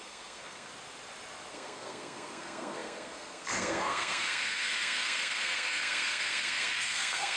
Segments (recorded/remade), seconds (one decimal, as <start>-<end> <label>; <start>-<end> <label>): 0.0-0.7 remade; 0.7-1.5 recorded; 1.5-7.4 remade